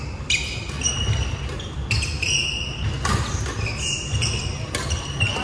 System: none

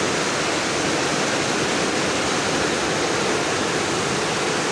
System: none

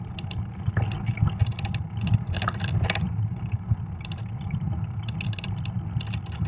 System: none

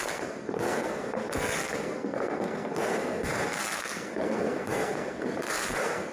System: codec, SNAC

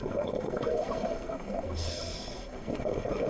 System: codec, SNAC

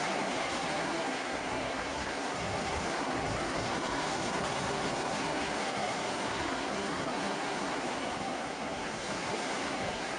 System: codec, SNAC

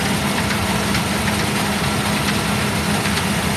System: none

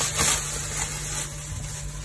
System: none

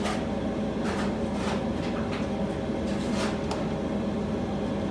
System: none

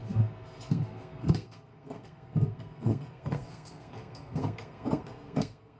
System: codec, SNAC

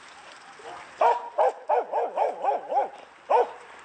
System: none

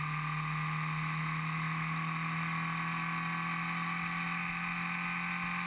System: none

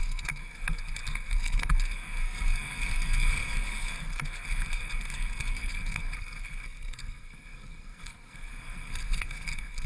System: codec, SNAC